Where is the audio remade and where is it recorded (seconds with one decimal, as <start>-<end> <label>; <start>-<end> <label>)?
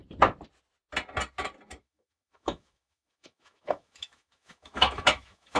0.0-1.8 recorded; 1.8-5.6 remade